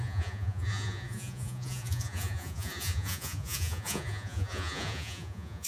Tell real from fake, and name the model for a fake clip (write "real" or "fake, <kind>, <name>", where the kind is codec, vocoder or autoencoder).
fake, vocoder, Vocos